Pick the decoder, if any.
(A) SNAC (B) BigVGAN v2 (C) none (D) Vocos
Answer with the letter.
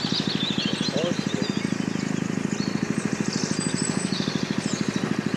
C